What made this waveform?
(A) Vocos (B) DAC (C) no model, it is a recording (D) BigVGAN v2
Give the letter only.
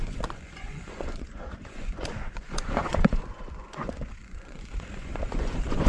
A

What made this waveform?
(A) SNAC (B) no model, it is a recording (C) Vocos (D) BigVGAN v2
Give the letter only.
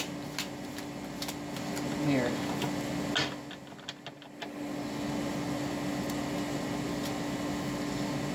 B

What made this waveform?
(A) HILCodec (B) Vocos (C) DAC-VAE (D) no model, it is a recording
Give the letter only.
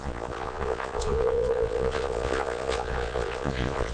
B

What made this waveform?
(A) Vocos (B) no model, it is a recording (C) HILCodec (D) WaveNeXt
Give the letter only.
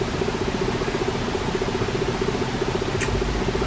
B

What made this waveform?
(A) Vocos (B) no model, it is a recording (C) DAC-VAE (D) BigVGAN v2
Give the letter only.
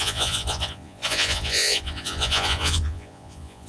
A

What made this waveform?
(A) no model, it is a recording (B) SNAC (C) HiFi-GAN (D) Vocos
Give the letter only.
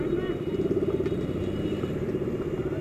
A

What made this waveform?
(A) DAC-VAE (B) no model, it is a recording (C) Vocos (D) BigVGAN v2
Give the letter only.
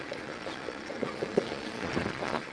C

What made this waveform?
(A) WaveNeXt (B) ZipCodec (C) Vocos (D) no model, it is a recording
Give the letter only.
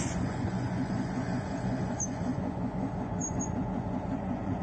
C